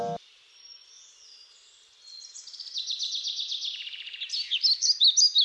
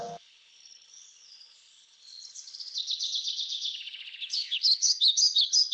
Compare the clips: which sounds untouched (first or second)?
first